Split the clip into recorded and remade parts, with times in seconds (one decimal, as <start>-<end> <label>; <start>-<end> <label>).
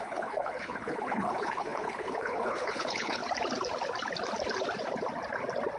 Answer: 0.0-3.2 remade; 3.2-5.8 recorded